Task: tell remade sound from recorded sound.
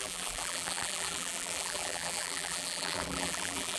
remade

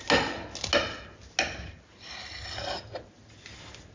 recorded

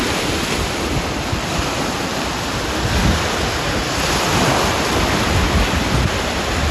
recorded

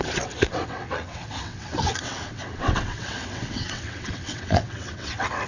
remade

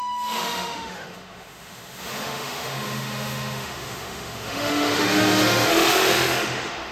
remade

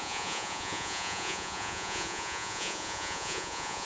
remade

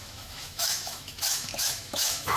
remade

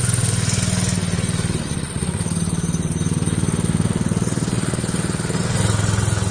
recorded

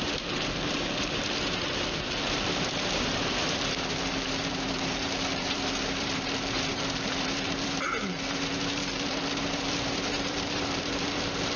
remade